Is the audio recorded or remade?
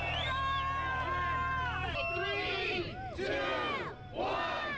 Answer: recorded